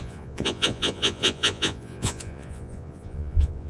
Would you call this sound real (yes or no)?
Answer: no